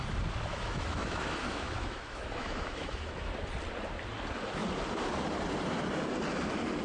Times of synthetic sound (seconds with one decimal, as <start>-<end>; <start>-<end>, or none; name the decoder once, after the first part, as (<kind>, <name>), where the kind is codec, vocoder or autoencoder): 0.5-3.3 (autoencoder, DAC-VAE)